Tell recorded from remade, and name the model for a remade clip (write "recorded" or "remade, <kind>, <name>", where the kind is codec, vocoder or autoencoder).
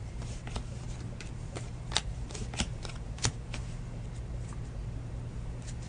remade, vocoder, BigVGAN v2